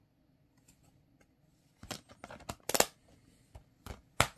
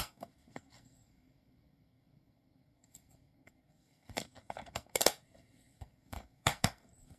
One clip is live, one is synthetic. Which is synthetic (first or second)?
second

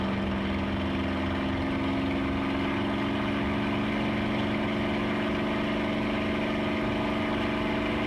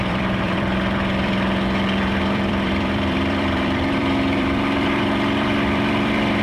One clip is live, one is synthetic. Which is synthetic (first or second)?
second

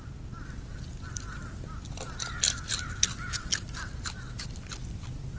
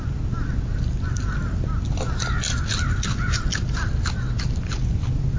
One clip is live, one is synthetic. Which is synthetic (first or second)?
first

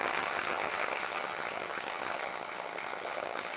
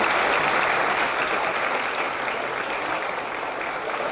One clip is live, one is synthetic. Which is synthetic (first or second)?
first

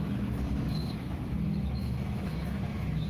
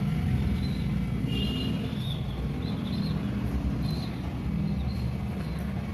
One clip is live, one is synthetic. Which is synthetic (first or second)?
first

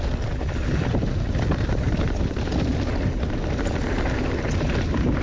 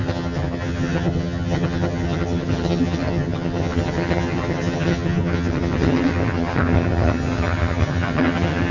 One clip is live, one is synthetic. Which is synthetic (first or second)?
second